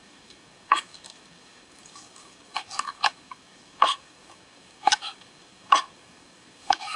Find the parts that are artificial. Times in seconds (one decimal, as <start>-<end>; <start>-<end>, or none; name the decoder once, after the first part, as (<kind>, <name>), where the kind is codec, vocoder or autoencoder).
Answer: 0.0-7.0 (codec, DAC)